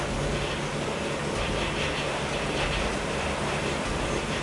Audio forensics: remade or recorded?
recorded